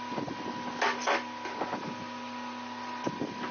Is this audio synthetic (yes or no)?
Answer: no